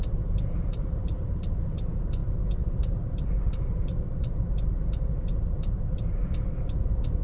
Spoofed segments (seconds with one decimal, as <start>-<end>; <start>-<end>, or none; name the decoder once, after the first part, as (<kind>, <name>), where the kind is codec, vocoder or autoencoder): 0.0-2.2 (vocoder, BigVGAN v2); 2.8-3.9; 4.4-6.2